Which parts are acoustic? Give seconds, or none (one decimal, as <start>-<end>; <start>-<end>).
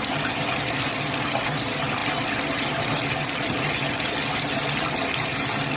0.0-5.8